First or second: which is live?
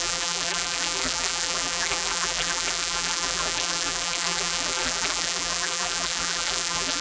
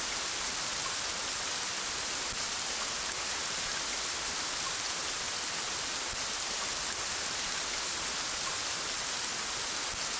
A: second